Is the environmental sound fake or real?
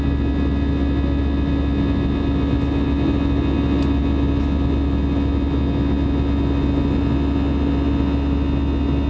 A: real